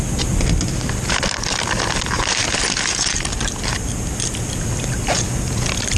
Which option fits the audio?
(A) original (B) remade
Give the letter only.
A